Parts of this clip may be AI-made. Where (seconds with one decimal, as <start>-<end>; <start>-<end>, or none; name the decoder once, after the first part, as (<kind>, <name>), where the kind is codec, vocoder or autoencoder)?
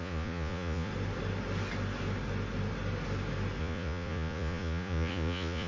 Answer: 0.0-0.9 (vocoder, Vocos); 3.6-5.7